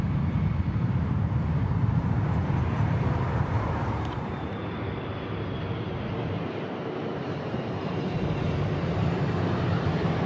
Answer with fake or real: fake